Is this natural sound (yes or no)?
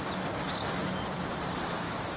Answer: yes